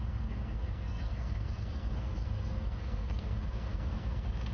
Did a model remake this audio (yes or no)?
yes